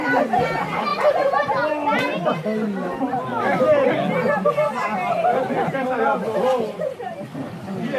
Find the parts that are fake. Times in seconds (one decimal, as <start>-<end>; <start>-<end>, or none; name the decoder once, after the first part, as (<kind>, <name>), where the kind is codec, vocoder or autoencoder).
none